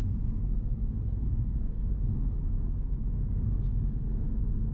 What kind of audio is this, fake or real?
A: fake